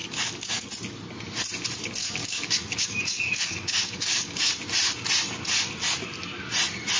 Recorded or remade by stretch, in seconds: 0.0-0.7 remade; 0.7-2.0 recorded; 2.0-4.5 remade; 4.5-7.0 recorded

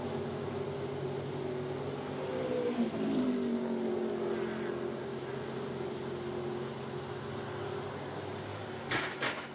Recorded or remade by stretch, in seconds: 0.0-8.5 recorded; 8.5-9.0 remade; 9.0-9.5 recorded

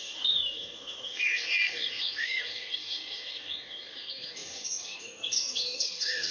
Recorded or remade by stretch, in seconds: 0.0-6.3 remade

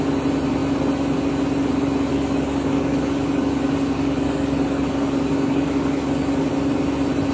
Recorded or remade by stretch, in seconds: 0.0-2.1 recorded; 2.1-6.5 remade; 6.5-7.3 recorded

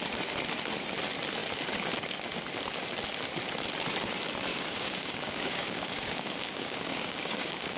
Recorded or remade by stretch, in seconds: 0.0-4.5 recorded; 4.5-7.8 remade